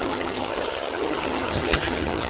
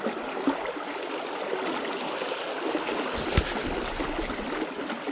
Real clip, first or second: second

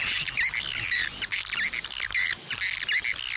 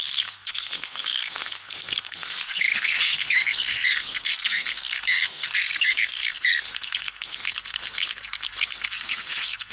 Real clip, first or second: first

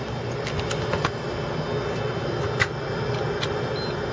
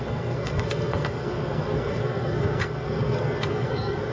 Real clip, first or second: first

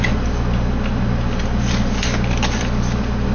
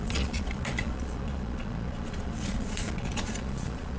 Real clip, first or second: first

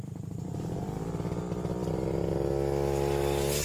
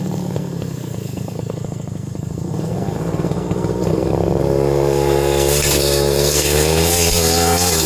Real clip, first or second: first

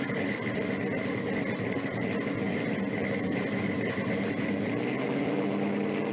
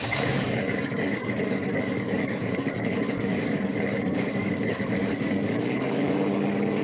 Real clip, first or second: first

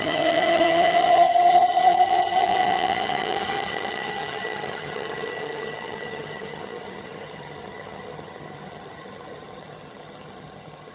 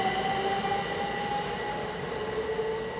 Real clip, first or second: second